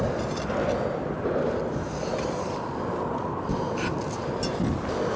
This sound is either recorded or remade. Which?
recorded